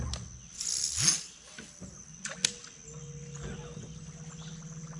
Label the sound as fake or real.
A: real